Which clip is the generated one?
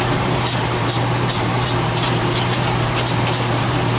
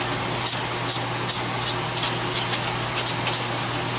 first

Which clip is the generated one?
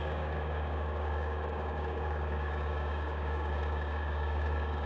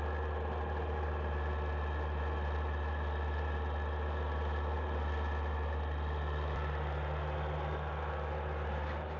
first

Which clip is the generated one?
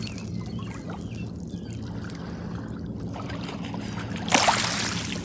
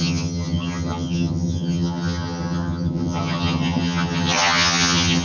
second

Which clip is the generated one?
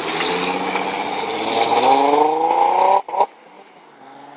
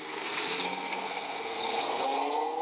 second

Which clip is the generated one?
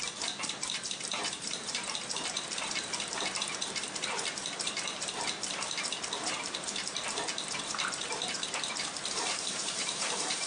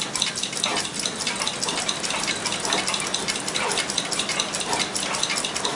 first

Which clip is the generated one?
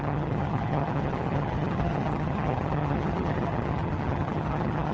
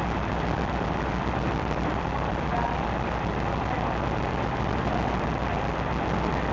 first